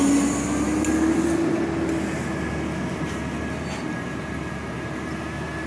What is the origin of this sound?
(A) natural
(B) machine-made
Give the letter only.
A